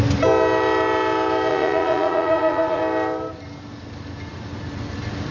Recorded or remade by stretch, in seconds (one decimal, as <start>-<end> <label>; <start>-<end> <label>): 0.0-1.5 recorded; 1.5-2.8 remade; 2.8-5.3 recorded